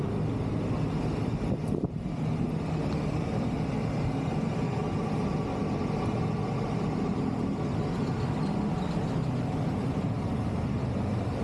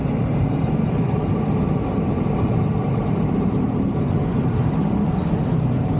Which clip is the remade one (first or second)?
second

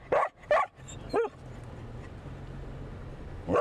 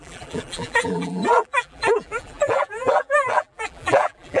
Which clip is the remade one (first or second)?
second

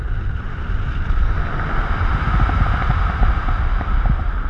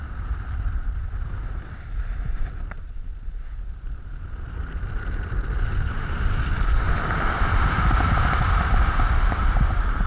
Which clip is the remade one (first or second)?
second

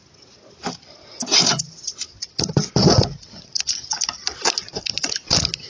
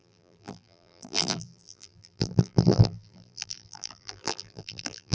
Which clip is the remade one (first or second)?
second